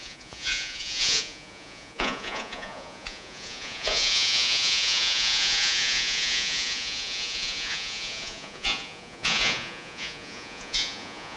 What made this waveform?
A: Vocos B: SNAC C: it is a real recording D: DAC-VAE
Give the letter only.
A